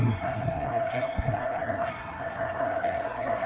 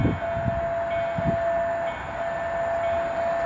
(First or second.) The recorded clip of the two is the second